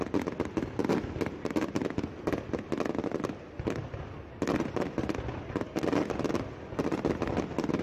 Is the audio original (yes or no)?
yes